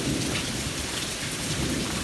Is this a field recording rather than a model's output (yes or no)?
no